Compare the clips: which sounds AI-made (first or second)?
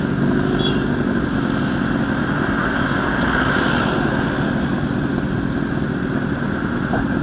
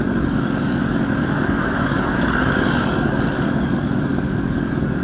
second